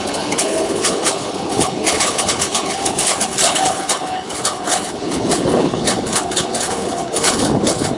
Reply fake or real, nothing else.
fake